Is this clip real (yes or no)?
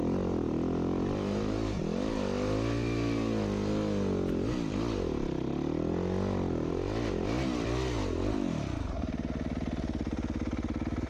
yes